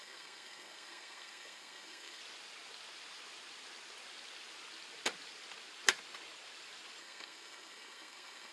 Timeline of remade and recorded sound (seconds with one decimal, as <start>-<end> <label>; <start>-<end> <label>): 0.0-2.2 remade; 2.2-7.0 recorded; 7.0-8.5 remade